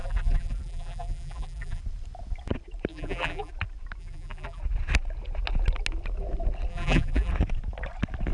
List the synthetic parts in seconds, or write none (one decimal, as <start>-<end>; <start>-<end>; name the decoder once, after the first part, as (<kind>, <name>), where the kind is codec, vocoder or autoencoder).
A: 0.0-1.8 (vocoder, BigVGAN v2); 2.9-3.5; 4.0-4.6; 6.7-7.3